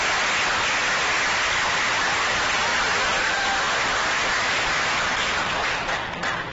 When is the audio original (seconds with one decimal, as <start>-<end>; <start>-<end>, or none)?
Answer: 0.0-6.5